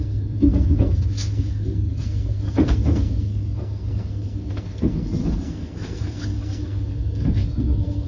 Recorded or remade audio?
remade